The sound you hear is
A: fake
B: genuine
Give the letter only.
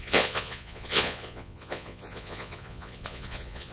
A